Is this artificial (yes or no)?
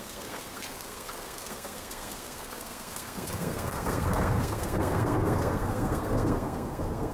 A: yes